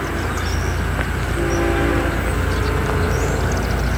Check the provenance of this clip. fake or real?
real